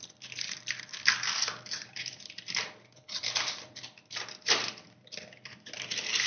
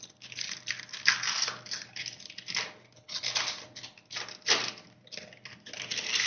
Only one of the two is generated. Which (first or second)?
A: first